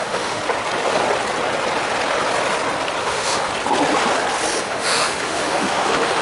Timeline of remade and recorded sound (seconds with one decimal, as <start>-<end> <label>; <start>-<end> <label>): 0.0-0.4 remade; 0.4-3.0 recorded; 3.0-3.5 remade; 3.5-4.6 recorded; 4.6-6.2 remade